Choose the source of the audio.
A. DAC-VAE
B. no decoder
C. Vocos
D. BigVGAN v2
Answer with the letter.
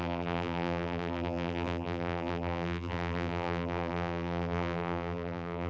D